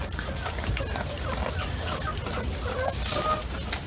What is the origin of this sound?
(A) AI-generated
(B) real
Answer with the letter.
B